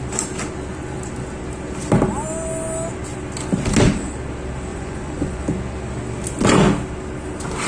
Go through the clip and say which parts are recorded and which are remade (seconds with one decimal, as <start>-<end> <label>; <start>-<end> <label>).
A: 0.0-4.7 recorded; 4.7-5.4 remade; 5.4-7.7 recorded